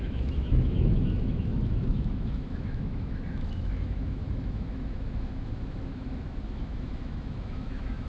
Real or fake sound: fake